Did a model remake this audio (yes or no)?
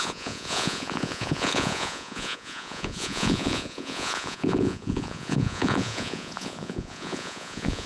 yes